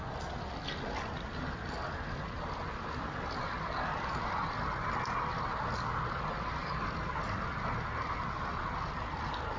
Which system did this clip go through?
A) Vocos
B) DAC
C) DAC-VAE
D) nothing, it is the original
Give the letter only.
D